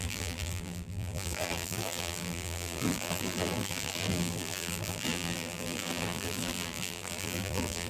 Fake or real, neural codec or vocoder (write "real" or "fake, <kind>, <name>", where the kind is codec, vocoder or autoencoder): fake, vocoder, BigVGAN v2